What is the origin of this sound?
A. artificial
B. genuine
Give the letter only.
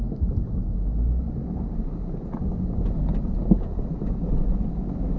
B